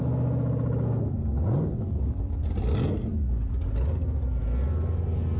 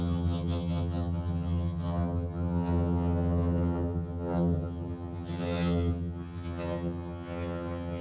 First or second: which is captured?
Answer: first